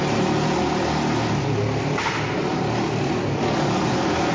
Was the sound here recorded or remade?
recorded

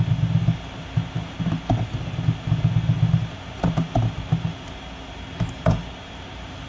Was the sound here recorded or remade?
recorded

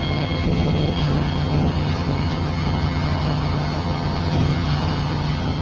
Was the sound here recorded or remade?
remade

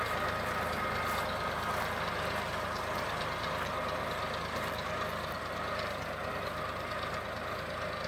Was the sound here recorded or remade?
recorded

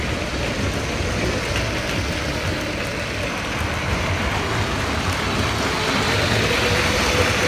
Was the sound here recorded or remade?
recorded